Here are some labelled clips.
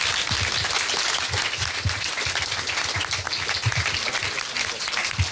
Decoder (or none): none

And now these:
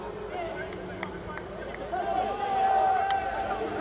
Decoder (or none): none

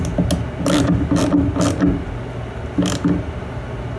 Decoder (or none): none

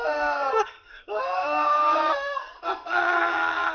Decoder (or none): codec, SNAC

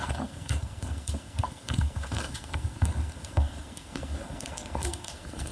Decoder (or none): codec, SNAC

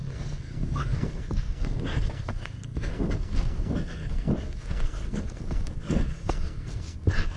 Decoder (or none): codec, SNAC